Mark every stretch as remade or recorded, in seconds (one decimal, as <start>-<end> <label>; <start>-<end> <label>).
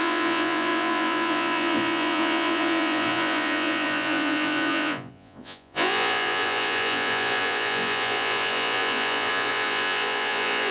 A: 0.0-10.7 remade